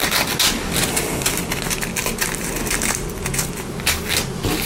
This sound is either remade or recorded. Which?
recorded